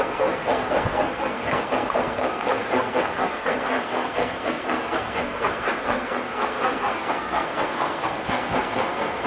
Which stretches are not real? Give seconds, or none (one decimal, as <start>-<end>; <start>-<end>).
0.0-9.3

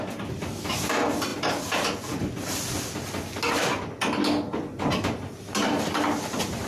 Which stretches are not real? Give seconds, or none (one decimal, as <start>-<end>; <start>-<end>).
none

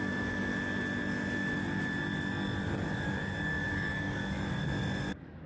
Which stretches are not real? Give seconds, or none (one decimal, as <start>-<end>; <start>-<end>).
0.0-0.5; 3.6-4.2; 5.1-5.5